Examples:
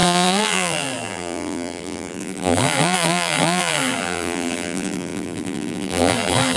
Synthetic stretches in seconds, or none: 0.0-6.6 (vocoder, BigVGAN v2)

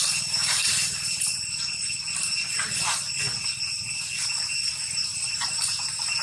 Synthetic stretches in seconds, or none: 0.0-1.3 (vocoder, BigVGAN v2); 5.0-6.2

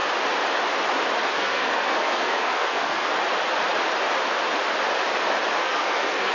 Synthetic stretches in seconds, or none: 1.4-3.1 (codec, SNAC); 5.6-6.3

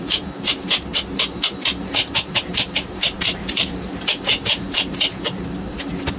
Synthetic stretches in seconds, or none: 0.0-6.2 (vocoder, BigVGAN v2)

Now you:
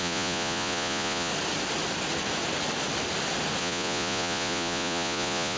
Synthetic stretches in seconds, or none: 0.0-1.3 (vocoder, Vocos); 3.6-5.6

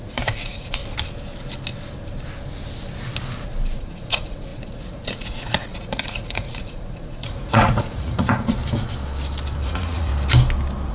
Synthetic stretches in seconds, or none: 0.0-0.8 (vocoder, Vocos); 3.7-8.6; 9.6-10.1

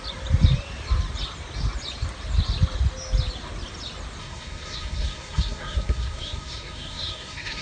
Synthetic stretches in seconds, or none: 4.2-7.6 (codec, SNAC)

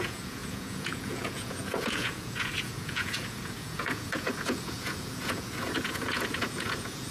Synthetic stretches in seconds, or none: 0.0-7.1 (vocoder, Vocos)